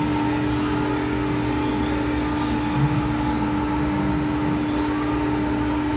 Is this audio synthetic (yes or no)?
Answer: no